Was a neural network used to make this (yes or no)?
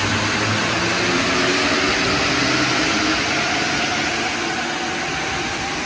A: no